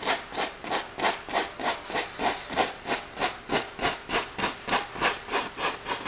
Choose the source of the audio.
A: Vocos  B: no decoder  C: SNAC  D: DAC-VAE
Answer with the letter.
B